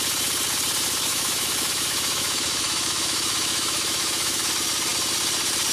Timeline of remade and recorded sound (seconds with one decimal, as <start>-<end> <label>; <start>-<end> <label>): 0.0-1.1 recorded; 1.1-4.5 remade; 4.5-5.7 recorded